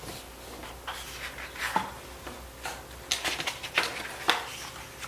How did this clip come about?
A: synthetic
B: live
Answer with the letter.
B